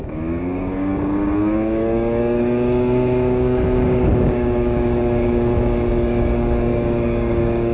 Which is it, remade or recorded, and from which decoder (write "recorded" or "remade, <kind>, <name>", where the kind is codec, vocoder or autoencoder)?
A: remade, codec, DAC